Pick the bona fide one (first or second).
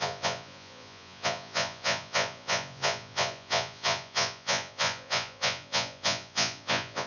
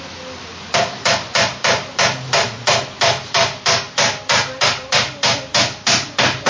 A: second